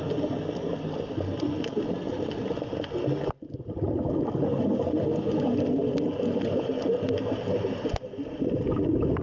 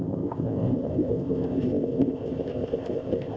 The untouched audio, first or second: first